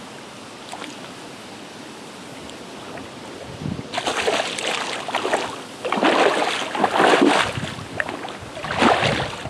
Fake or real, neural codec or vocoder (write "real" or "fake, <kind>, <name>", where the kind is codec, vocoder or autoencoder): real